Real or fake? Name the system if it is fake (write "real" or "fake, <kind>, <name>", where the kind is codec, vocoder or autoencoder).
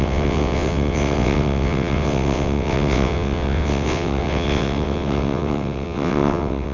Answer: fake, vocoder, WaveNeXt